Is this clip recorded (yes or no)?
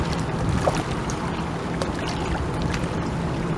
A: yes